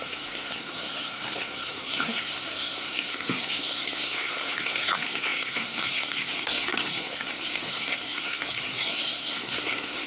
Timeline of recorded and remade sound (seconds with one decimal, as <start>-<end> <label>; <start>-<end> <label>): 0.0-10.1 remade